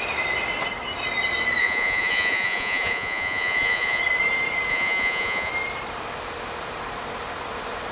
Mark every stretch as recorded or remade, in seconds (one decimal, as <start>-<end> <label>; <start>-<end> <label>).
0.0-1.6 recorded; 1.6-4.0 remade; 4.0-4.7 recorded; 4.7-5.5 remade; 5.5-7.9 recorded